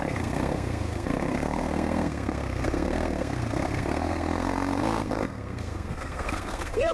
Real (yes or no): no